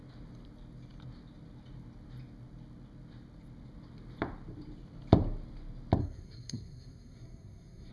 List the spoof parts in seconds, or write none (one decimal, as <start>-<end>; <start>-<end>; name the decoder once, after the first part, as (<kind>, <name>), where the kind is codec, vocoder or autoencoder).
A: 6.0-7.9 (codec, SNAC)